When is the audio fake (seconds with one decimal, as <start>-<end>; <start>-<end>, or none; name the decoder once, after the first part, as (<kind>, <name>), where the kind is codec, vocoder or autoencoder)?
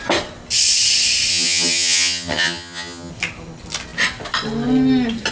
1.3-3.1 (vocoder, HiFi-GAN)